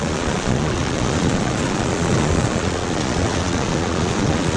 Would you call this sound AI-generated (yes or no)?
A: yes